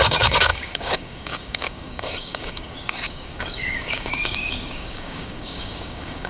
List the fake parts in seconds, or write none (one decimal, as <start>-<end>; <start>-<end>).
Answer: 0.0-6.3